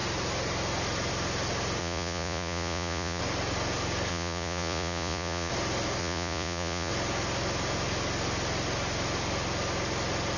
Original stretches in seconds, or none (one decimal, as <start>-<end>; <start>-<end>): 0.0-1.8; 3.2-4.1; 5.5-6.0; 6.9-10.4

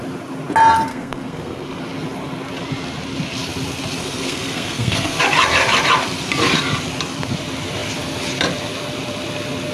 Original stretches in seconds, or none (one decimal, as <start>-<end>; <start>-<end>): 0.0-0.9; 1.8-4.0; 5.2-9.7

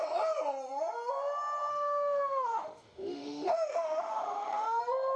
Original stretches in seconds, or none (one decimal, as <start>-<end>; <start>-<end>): 0.0-1.7; 4.8-5.2

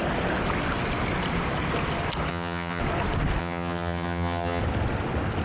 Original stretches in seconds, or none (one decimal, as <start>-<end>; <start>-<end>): 0.0-2.3; 2.8-3.4; 4.6-5.4